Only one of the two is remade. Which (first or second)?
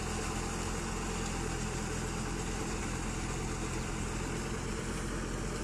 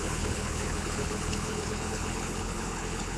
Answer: second